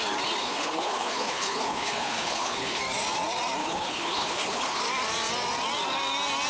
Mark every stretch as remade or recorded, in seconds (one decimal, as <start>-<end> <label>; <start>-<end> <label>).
0.0-0.4 recorded; 0.4-2.8 remade; 2.8-3.6 recorded; 3.6-4.8 remade; 4.8-6.5 recorded